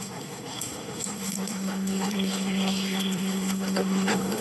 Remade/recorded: remade